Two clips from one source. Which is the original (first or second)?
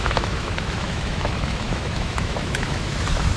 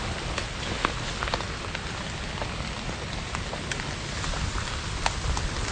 second